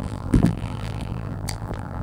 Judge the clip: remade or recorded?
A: remade